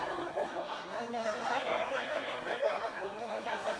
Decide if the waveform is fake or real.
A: fake